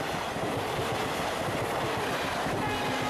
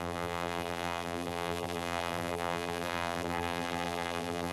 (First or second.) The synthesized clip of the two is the second